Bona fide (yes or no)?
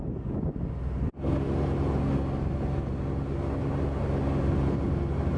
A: yes